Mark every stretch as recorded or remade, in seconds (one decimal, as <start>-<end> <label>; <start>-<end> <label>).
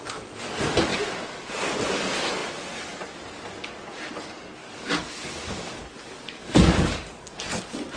0.0-4.6 recorded; 4.6-7.6 remade; 7.6-8.0 recorded